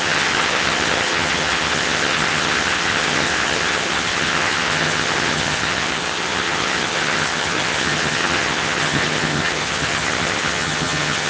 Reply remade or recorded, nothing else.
remade